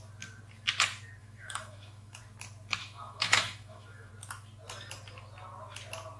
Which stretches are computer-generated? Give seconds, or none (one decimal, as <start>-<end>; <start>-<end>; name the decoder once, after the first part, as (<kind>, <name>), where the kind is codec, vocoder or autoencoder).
1.2-2.2 (autoencoder, DAC-VAE); 2.8-4.1